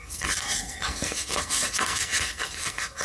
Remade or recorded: remade